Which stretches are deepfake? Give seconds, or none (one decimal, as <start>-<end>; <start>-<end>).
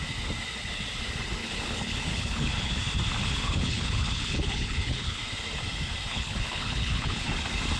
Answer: 1.4-2.8; 3.2-5.2; 6.1-7.3